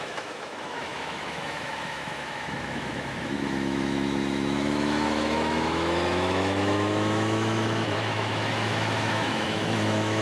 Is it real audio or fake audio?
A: fake